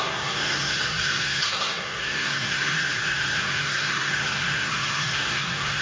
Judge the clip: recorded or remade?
remade